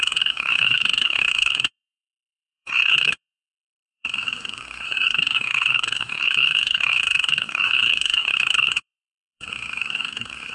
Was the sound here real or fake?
fake